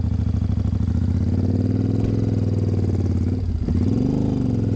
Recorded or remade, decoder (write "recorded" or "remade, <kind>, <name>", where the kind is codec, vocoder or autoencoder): recorded